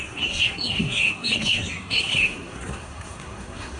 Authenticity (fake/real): fake